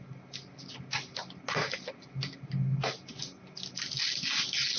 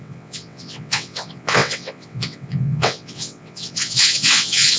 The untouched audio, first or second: first